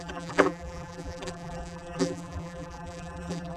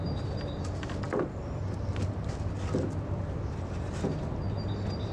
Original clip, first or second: second